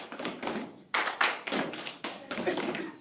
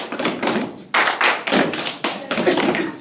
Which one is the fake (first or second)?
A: first